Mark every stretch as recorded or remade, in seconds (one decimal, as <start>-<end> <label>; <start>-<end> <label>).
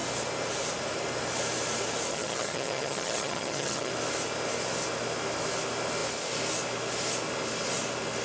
0.0-2.1 recorded; 2.1-3.9 remade; 3.9-8.2 recorded